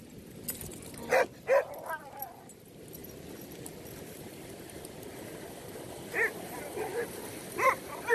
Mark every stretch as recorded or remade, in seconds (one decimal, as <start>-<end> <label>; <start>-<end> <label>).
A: 0.0-8.1 recorded